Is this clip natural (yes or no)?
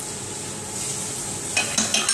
yes